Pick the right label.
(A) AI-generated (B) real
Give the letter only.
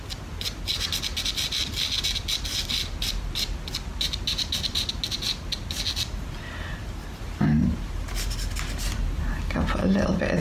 B